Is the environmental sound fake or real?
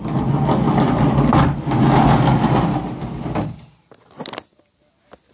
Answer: real